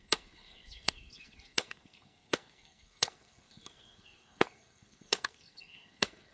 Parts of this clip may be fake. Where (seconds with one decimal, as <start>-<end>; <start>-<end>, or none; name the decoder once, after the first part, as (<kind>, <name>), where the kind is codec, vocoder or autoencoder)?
0.0-6.3 (codec, SNAC)